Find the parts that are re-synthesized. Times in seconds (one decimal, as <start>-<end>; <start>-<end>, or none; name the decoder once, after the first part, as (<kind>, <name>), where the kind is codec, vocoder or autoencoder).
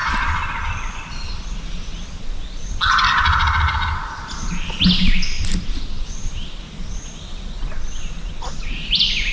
none